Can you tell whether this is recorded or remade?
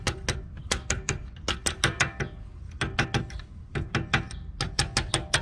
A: recorded